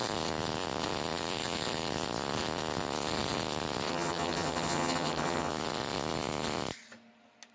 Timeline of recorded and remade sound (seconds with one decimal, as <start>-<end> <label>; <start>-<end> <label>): 0.0-3.9 recorded; 3.9-5.5 remade; 5.5-7.5 recorded